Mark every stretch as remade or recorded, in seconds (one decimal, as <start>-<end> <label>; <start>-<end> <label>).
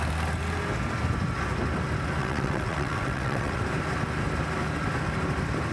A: 0.0-2.2 recorded; 2.2-3.6 remade; 3.6-5.7 recorded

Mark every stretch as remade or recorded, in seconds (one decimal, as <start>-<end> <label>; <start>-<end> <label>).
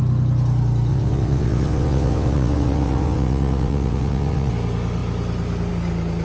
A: 0.0-0.9 recorded; 0.9-4.5 remade; 4.5-6.2 recorded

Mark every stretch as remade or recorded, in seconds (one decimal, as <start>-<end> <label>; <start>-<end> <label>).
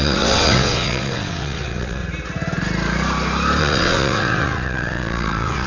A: 0.0-2.0 remade; 2.0-3.6 recorded; 3.6-5.7 remade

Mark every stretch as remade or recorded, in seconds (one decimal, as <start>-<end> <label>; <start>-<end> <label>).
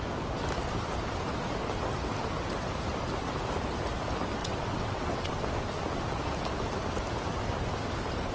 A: 0.0-4.4 recorded; 4.4-5.3 remade; 5.3-8.3 recorded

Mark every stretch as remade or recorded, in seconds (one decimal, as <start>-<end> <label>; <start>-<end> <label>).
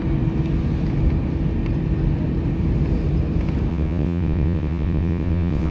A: 0.0-3.7 recorded; 3.7-5.7 remade